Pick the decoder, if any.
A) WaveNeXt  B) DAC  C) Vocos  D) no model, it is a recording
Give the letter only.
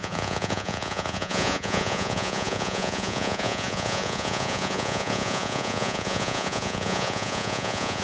C